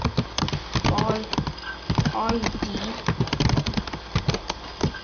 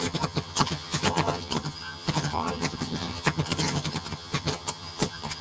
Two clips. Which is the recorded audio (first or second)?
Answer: first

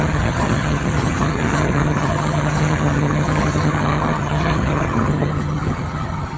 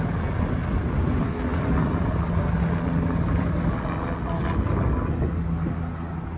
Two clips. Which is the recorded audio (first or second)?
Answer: second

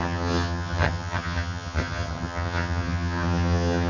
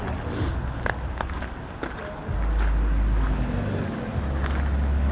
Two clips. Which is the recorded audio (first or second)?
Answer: second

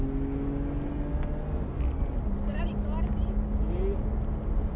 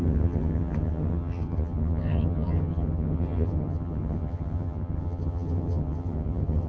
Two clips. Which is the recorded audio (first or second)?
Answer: first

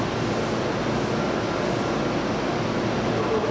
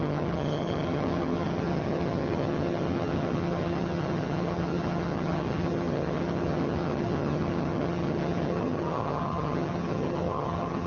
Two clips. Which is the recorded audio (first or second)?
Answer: first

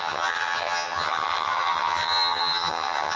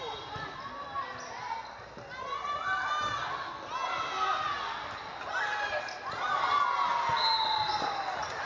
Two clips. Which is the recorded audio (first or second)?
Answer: second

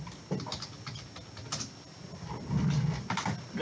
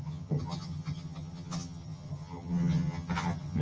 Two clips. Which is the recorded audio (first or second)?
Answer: first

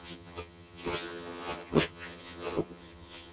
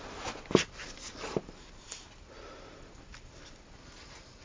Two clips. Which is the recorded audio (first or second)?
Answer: second